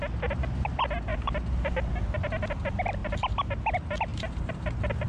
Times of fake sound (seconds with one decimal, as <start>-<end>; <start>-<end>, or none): 1.1-2.0; 3.0-3.6; 4.1-5.1